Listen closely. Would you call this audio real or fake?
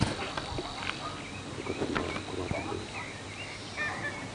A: real